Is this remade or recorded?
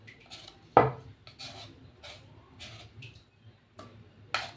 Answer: recorded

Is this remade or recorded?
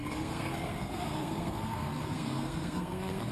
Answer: remade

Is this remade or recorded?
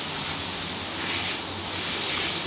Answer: recorded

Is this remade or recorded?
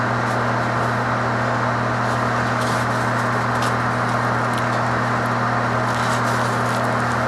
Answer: recorded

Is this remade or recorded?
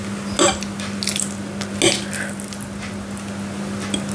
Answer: recorded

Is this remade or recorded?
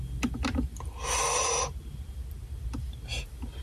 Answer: recorded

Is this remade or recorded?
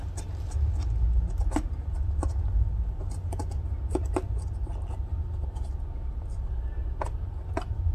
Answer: recorded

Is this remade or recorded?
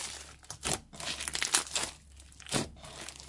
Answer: recorded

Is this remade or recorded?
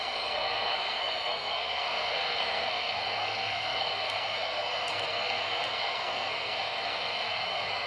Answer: remade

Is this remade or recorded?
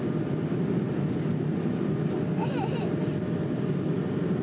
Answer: recorded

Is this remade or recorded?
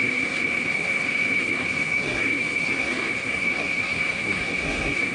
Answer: remade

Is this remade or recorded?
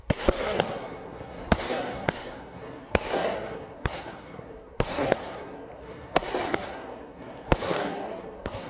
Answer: remade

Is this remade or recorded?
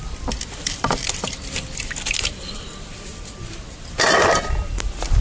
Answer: recorded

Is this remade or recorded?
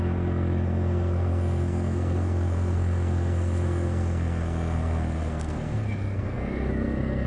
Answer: remade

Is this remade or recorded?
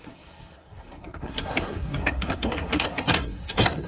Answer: remade